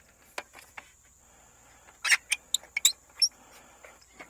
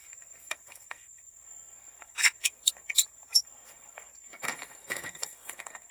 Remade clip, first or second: second